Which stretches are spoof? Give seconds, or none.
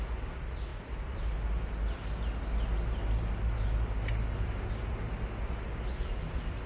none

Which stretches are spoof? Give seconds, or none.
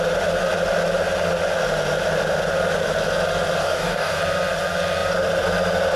3.6-4.2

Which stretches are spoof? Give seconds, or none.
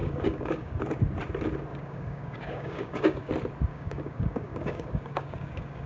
0.0-0.8; 1.7-3.3; 3.7-5.9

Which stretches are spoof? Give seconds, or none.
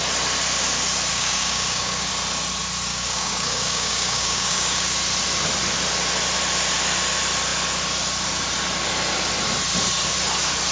1.1-2.1; 2.9-4.9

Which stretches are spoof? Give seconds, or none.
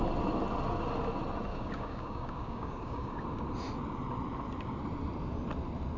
1.5-3.2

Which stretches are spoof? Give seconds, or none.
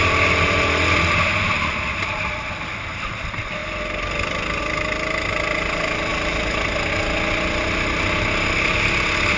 none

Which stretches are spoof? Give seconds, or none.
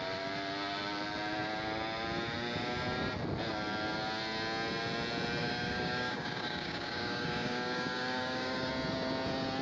5.4-8.7